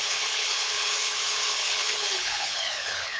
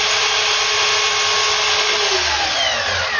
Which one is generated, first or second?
first